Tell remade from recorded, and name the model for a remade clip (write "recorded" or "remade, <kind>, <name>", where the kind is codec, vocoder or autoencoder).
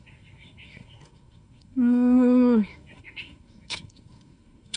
remade, codec, SNAC